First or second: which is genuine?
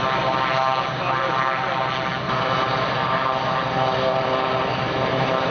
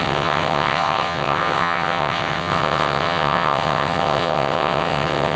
first